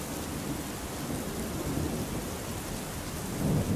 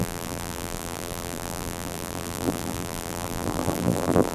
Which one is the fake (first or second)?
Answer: second